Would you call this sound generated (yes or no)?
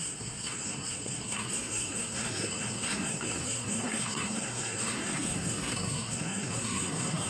yes